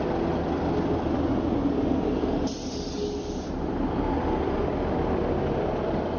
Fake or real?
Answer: real